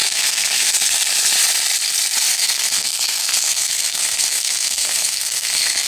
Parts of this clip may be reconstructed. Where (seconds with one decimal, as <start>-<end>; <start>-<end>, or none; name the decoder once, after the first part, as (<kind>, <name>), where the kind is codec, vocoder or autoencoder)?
0.0-0.9 (codec, SNAC); 2.3-5.9